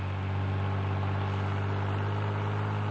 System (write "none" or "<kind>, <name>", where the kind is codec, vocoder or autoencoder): none